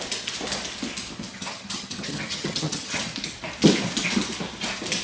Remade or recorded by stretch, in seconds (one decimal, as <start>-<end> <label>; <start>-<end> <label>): 0.0-1.3 recorded; 1.3-3.0 remade; 3.0-5.0 recorded